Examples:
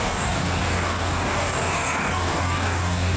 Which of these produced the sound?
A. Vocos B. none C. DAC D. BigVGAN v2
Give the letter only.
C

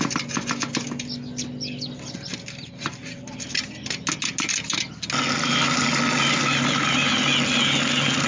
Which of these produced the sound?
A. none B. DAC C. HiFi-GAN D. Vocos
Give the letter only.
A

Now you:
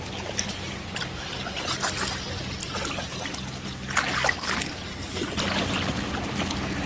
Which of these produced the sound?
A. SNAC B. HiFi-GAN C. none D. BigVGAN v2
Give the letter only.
C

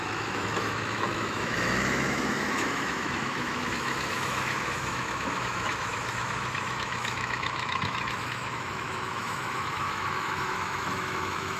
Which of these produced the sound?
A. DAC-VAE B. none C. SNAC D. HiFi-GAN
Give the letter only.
A